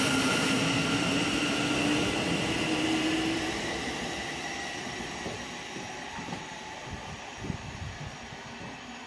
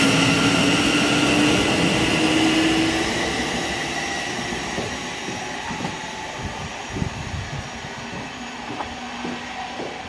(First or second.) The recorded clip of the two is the second